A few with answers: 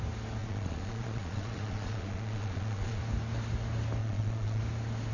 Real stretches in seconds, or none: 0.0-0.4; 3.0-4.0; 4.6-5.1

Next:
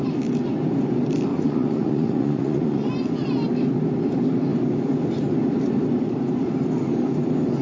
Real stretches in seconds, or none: 0.0-1.3; 2.9-7.6

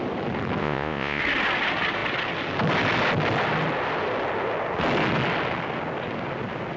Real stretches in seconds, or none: 0.0-0.6; 1.2-6.8

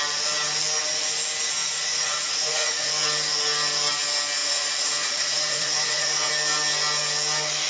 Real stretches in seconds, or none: 0.0-1.6; 2.9-4.4; 6.3-7.7

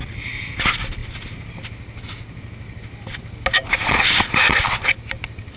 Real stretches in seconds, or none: 0.0-5.6

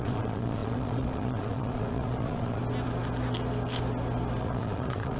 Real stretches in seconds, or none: 2.6-4.4

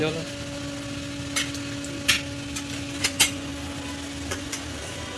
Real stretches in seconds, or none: 0.0-3.0; 3.5-4.3

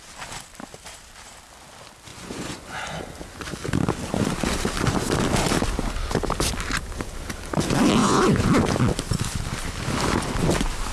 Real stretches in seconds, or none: 0.0-2.1; 3.0-8.0; 8.5-10.9